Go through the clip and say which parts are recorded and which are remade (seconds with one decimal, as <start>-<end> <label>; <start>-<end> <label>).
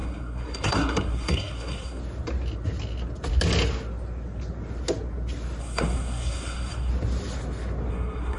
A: 0.0-2.0 remade; 2.0-5.6 recorded; 5.6-6.9 remade; 6.9-7.9 recorded; 7.9-8.4 remade